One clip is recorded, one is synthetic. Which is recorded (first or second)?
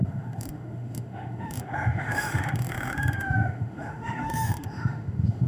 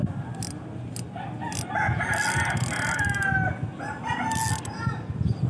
second